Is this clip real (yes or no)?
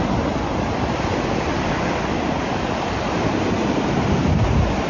yes